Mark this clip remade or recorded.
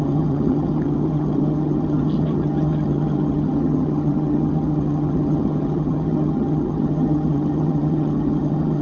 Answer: remade